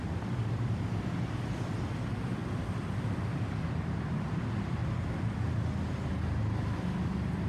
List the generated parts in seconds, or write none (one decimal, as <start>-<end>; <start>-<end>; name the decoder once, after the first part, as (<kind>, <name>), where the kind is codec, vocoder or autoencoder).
0.0-4.8 (vocoder, BigVGAN v2); 6.4-7.5